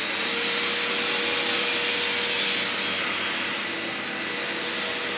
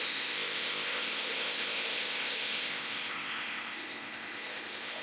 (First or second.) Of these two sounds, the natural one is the first